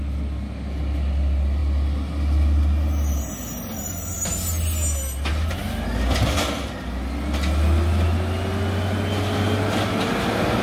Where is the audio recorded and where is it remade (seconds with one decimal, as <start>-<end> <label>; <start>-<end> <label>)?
0.0-10.6 recorded